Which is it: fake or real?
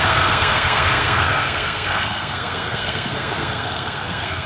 fake